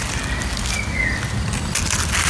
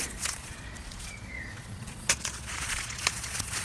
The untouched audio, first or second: first